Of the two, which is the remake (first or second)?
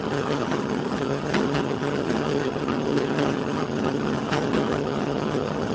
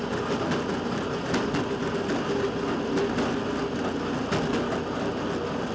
first